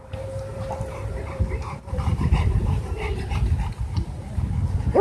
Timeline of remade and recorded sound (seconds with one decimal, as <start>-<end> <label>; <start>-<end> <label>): 0.0-0.5 recorded; 0.5-3.5 remade; 3.5-5.0 recorded